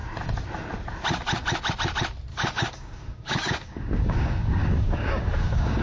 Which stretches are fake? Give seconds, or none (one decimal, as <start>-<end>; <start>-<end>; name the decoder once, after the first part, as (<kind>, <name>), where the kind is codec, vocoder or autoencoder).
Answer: 2.3-5.8 (codec, DAC)